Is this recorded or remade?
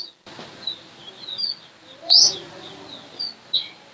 recorded